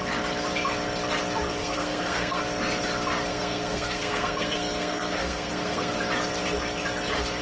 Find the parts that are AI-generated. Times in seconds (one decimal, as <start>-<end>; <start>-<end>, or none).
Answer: 1.6-2.4; 3.3-6.0